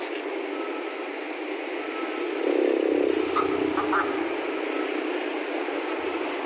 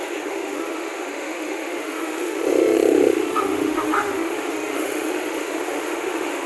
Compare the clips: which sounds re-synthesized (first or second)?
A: second